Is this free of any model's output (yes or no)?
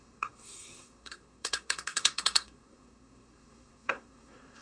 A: no